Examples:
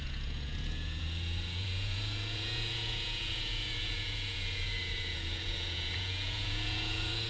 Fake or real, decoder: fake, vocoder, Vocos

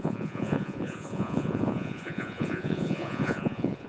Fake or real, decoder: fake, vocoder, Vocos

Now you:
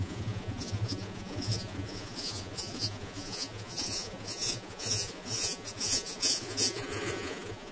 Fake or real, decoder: fake, vocoder, Vocos